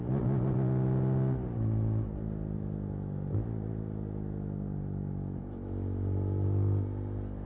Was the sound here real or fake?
real